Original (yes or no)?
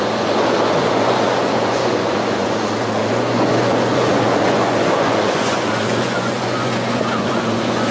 no